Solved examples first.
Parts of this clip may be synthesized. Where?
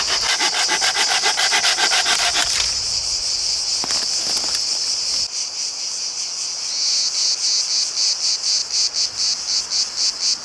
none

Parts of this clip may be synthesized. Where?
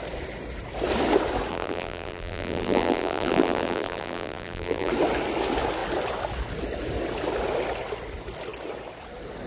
1.5-4.9 (vocoder, BigVGAN v2)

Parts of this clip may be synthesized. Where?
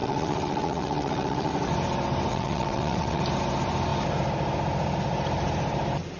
0.0-1.5 (vocoder, WaveNeXt); 2.3-3.2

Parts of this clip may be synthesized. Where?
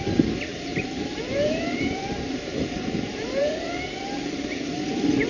0.5-3.7 (vocoder, BigVGAN v2)